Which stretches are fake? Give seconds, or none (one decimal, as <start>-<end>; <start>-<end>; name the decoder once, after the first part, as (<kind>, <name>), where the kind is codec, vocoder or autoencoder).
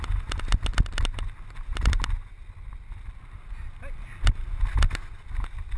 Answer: none